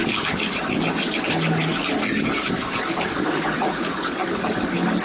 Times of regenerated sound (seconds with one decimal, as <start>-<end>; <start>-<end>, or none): 3.0-4.2